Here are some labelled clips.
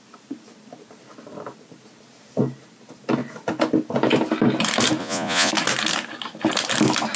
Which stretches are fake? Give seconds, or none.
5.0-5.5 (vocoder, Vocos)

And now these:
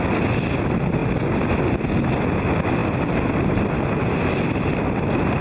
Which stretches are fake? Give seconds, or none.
none

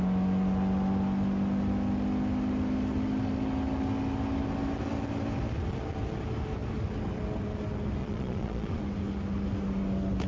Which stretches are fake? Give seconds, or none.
8.0-8.8 (vocoder, Vocos)

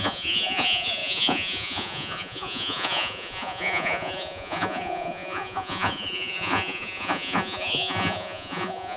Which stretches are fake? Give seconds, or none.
0.0-9.0 (vocoder, Vocos)